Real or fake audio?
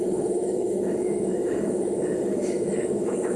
fake